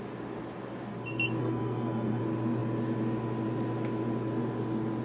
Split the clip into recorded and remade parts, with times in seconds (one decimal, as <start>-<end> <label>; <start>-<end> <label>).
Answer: 0.0-1.4 recorded; 1.4-2.2 remade; 2.2-5.0 recorded